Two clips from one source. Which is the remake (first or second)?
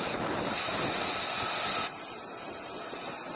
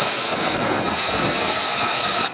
second